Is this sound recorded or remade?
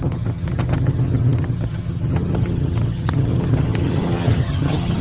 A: remade